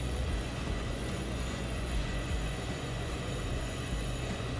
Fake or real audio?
fake